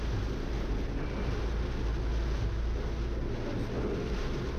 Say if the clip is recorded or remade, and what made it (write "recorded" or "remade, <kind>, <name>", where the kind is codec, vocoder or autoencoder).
recorded